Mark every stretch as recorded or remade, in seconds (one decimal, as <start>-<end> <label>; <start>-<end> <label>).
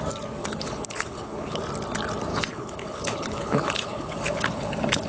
0.0-0.4 recorded; 0.4-1.6 remade; 1.6-2.3 recorded; 2.3-5.1 remade